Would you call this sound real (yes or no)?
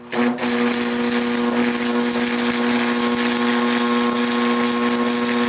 yes